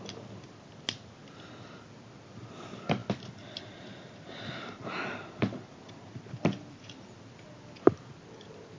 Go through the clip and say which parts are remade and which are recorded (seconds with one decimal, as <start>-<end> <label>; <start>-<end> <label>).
0.0-3.0 recorded; 3.0-6.8 remade; 6.8-8.8 recorded